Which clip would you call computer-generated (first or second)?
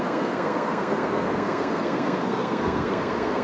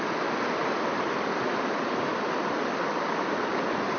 first